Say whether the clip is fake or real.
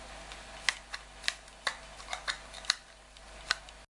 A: real